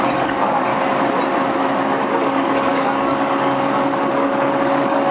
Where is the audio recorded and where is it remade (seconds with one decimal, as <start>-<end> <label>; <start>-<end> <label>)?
0.0-0.7 remade; 0.7-1.9 recorded; 1.9-5.1 remade